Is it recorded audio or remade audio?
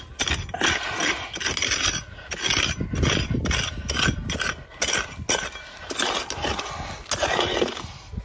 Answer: recorded